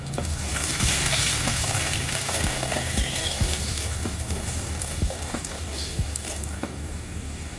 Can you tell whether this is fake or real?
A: fake